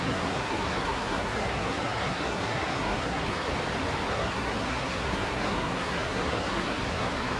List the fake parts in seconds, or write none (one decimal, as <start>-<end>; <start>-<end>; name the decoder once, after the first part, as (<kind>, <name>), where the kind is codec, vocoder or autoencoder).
0.0-3.5 (codec, SNAC); 4.1-7.4